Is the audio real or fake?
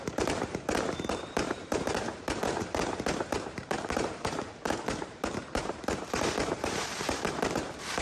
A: fake